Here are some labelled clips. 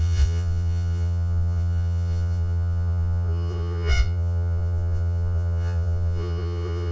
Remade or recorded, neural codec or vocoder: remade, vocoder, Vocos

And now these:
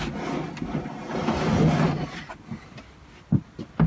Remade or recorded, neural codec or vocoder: recorded